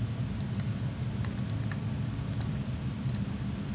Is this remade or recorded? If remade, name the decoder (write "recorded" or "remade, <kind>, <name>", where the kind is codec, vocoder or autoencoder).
recorded